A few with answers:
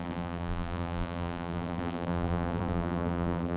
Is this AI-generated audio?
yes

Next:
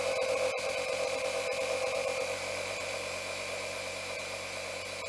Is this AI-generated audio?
yes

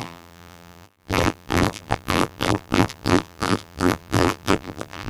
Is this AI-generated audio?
yes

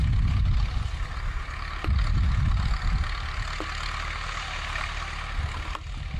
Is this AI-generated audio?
no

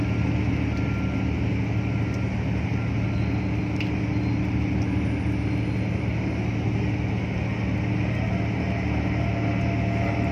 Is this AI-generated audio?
no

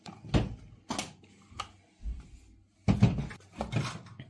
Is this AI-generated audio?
no